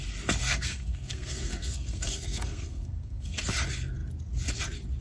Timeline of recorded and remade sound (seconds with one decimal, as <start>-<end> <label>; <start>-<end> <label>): 0.0-0.4 recorded; 0.4-3.4 remade; 3.4-5.0 recorded